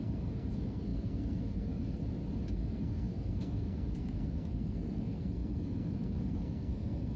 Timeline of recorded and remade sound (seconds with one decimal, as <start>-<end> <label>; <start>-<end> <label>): 0.0-2.0 remade; 2.0-2.5 recorded; 2.5-7.2 remade